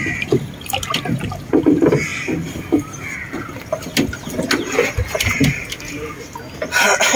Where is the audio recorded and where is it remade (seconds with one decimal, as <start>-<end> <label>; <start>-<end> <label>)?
0.0-7.2 recorded